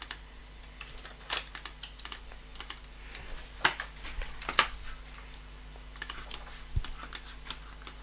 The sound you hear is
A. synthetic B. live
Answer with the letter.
B